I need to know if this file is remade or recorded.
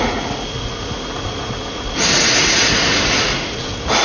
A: remade